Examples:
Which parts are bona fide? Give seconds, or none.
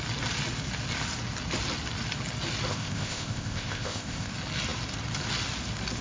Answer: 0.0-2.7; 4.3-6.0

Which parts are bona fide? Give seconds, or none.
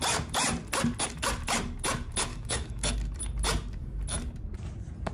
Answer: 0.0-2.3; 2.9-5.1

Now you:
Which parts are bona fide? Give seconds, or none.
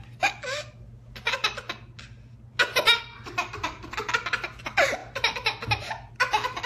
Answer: 0.0-6.7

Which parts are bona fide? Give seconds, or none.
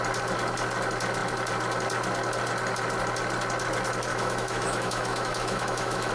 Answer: 0.0-4.1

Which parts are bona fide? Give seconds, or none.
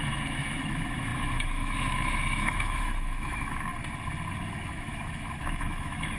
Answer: 3.7-4.3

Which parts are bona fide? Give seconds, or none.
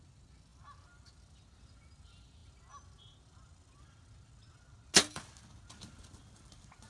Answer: 0.0-6.9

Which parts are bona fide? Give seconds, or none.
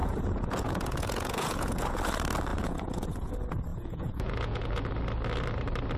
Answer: 2.0-2.5; 3.3-3.7; 4.9-6.0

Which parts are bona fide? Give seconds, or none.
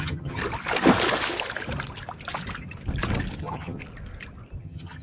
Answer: 0.4-3.4; 3.8-4.6